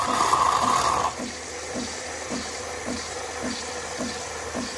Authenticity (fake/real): real